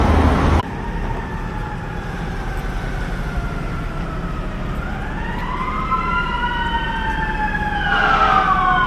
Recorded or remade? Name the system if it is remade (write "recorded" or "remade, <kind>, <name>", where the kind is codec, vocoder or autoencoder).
recorded